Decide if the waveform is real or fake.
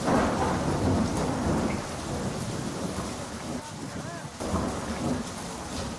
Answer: real